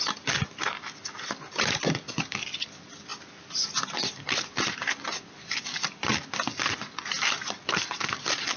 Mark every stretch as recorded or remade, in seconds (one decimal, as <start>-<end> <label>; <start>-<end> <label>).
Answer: 0.0-3.1 remade; 3.1-3.7 recorded; 3.7-6.1 remade; 6.1-6.8 recorded; 6.8-8.6 remade